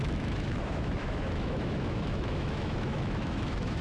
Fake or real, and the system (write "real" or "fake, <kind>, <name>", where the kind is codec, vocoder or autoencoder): fake, autoencoder, DAC-VAE